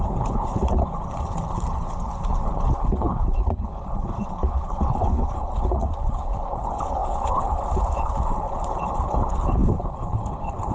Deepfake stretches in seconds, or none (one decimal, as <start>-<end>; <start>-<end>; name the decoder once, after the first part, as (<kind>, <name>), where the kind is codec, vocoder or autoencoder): 0.0-10.7 (codec, HILCodec)

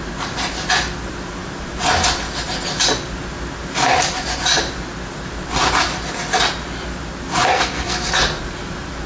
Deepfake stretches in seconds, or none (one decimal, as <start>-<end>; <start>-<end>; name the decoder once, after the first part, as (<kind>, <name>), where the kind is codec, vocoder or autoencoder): 7.5-8.1 (codec, SNAC)

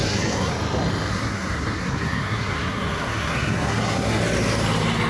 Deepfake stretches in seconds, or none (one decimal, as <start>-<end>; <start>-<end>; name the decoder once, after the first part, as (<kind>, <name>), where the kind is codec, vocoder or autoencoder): 0.0-0.5 (codec, SNAC); 1.1-4.2

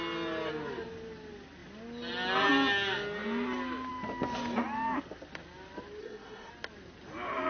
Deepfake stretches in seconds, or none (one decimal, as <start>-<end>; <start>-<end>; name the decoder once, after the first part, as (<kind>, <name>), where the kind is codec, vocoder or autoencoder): 6.0-6.5 (codec, SNAC)

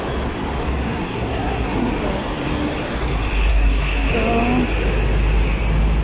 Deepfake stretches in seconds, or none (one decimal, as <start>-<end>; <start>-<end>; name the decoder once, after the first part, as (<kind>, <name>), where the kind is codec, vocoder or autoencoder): 0.6-1.9 (codec, SNAC); 3.5-4.1

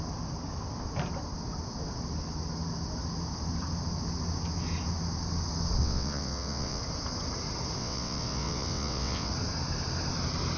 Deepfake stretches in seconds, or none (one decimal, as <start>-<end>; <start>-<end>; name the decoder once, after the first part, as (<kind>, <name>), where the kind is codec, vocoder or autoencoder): 5.8-6.8 (vocoder, WaveNeXt); 7.8-9.3

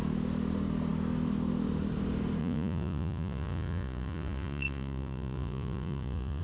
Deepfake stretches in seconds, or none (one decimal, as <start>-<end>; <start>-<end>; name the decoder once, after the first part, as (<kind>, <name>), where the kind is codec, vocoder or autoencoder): 2.4-6.4 (vocoder, Vocos)